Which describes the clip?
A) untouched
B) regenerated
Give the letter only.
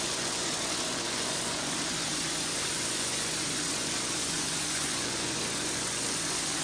B